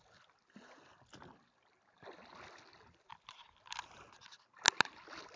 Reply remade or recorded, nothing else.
recorded